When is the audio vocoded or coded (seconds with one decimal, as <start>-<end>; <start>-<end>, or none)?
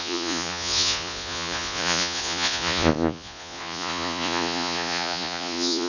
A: 0.0-5.9